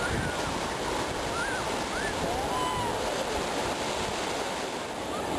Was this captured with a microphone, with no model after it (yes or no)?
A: yes